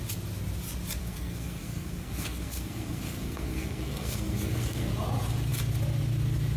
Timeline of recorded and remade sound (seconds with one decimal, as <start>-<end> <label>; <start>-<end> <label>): 0.0-1.0 recorded; 1.0-4.9 remade; 4.9-6.6 recorded